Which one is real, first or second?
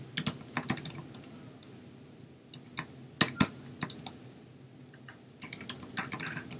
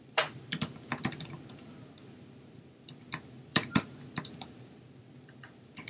first